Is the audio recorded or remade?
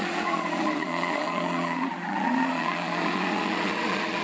remade